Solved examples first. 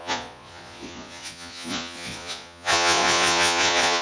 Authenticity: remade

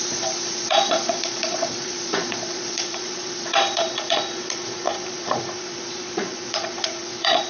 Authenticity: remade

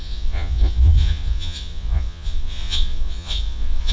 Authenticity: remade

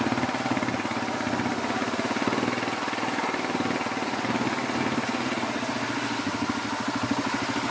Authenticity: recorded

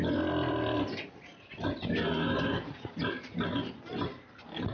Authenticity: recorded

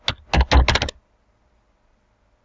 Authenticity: recorded